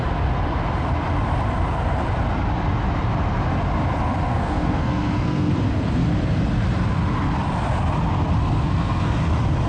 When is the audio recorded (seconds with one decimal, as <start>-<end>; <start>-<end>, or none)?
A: 0.0-4.3; 6.1-8.4; 9.2-9.7